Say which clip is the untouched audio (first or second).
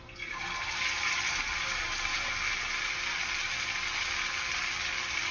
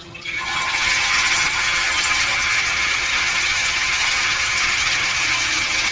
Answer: first